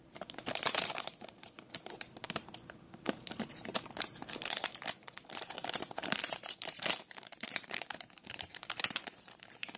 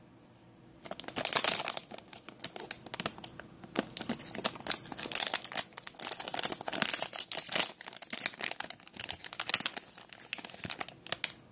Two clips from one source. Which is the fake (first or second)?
first